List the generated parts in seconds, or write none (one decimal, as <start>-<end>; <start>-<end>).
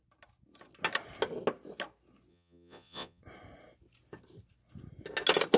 2.3-3.2